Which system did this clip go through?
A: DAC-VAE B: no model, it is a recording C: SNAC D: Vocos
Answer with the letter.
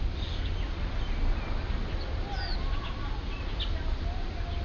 B